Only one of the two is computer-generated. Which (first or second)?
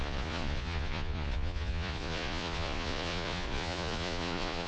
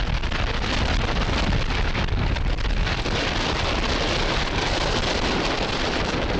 first